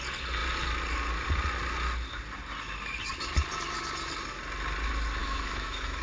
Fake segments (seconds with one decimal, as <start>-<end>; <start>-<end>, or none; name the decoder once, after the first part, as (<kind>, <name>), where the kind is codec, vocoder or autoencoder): 5.2-6.0 (autoencoder, DAC-VAE)